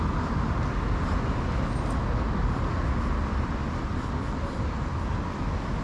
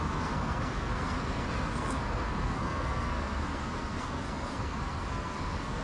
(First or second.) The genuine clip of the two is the first